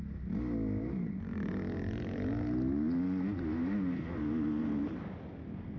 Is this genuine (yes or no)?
yes